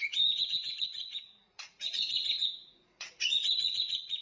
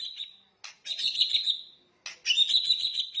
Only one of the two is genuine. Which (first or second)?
second